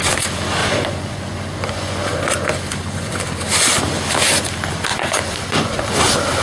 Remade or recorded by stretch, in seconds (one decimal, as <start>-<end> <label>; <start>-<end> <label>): 0.0-0.6 recorded; 0.6-3.2 remade; 3.2-4.9 recorded; 4.9-5.9 remade; 5.9-6.4 recorded